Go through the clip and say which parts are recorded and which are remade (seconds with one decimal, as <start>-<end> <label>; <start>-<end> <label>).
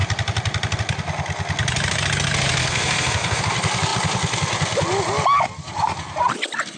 0.0-2.6 recorded; 2.6-3.4 remade; 3.4-6.8 recorded